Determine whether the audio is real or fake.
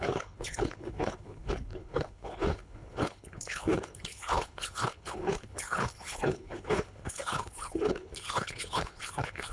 fake